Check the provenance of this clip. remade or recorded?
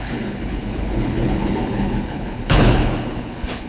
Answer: remade